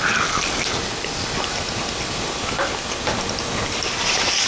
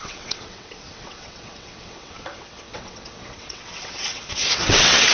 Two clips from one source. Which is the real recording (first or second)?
first